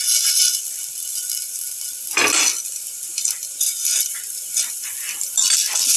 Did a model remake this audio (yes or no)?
no